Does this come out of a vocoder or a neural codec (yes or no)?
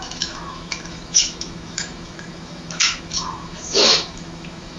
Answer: yes